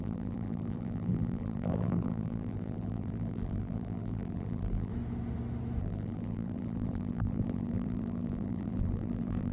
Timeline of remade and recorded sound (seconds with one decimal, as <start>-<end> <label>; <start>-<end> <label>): 0.0-4.9 remade; 4.9-5.8 recorded; 5.8-9.5 remade